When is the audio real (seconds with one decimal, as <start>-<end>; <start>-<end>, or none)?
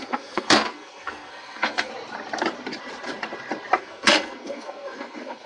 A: 1.9-3.8